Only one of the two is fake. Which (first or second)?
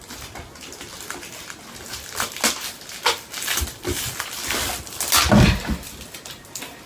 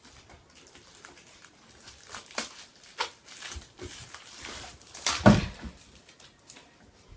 second